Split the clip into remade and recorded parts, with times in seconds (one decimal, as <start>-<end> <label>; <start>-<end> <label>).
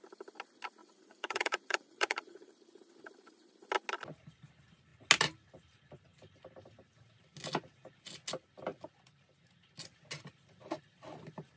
0.0-0.8 recorded; 0.8-2.5 remade; 2.5-11.6 recorded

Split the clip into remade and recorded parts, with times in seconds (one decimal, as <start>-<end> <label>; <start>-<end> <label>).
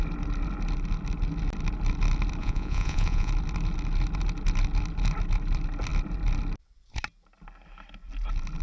0.0-2.4 recorded; 2.4-3.3 remade; 3.3-8.6 recorded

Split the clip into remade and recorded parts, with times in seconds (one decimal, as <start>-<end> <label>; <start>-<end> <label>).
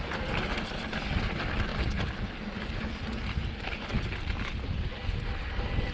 0.0-5.9 recorded